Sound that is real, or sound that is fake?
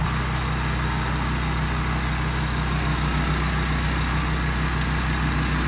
real